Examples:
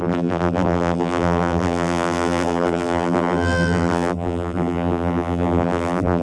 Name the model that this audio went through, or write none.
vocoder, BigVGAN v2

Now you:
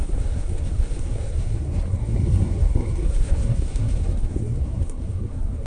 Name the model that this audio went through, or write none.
codec, SNAC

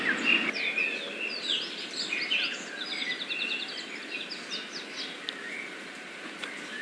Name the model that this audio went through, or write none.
none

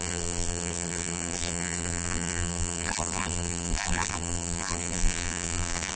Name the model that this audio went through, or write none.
vocoder, BigVGAN v2